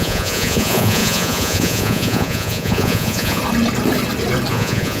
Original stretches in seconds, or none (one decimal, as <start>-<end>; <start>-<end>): 3.4-4.5